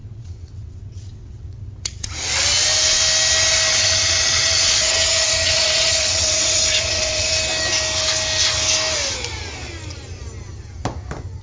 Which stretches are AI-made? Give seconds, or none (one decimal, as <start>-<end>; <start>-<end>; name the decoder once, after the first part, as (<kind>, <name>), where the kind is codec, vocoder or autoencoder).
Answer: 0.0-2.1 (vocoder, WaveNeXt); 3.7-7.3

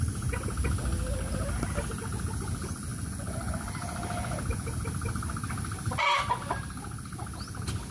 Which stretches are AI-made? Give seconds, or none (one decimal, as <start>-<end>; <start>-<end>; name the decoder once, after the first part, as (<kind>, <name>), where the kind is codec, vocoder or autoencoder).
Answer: 2.9-3.5 (vocoder, Vocos)

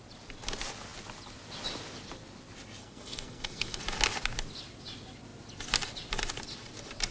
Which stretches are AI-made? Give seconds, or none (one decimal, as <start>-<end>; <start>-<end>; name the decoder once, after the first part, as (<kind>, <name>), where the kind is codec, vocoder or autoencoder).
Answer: 2.8-3.8 (codec, SNAC)

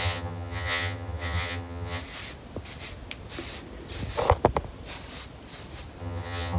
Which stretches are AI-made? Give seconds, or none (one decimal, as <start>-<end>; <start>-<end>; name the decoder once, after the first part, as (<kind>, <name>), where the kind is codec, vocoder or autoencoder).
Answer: 0.0-2.0 (vocoder, HiFi-GAN); 6.0-6.6